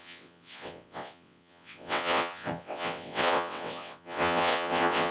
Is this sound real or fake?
fake